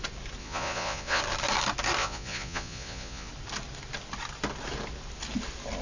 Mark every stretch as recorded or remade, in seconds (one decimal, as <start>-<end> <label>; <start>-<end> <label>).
0.0-0.4 recorded; 0.4-1.2 remade; 1.2-2.0 recorded; 2.0-3.3 remade; 3.3-5.8 recorded